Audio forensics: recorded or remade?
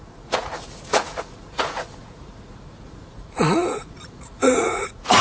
remade